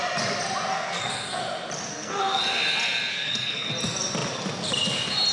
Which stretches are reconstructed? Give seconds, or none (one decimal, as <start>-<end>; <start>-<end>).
0.7-1.4; 1.9-2.4; 3.1-3.7